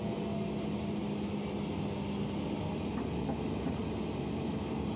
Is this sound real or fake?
real